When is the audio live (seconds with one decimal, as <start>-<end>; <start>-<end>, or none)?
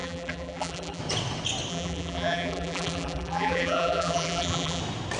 1.0-1.7; 4.8-5.2